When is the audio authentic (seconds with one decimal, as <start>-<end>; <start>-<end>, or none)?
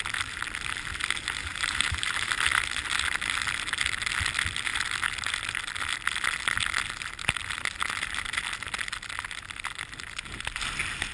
0.0-1.5; 2.3-11.1